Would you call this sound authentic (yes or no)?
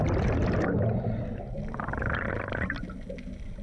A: yes